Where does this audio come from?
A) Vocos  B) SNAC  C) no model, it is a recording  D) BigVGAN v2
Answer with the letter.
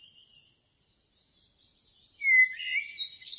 C